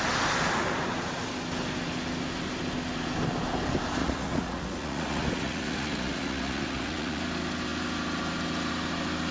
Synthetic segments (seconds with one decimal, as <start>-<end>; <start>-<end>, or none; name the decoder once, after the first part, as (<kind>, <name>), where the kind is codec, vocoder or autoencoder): 4.0-7.2 (vocoder, Vocos)